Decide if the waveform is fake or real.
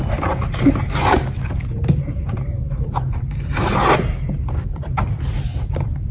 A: fake